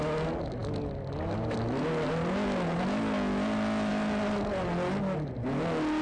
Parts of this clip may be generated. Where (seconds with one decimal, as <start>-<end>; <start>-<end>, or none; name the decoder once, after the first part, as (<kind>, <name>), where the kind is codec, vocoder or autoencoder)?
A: none